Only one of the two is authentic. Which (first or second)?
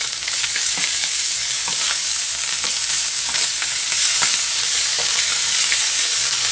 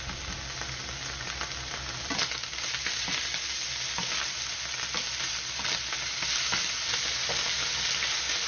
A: second